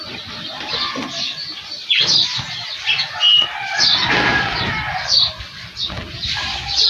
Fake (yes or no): no